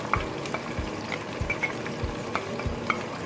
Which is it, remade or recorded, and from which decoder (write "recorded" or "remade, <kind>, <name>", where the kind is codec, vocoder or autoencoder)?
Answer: recorded